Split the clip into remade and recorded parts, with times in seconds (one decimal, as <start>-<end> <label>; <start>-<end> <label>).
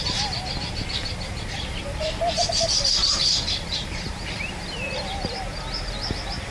0.0-1.0 recorded; 1.0-4.9 remade; 4.9-6.5 recorded